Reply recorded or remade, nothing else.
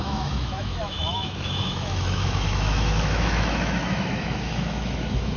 remade